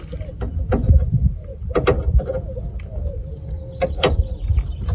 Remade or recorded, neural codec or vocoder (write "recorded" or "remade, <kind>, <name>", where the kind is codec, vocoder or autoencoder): recorded